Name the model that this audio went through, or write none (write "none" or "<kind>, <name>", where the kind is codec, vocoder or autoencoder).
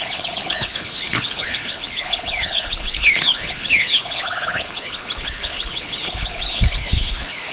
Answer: codec, HILCodec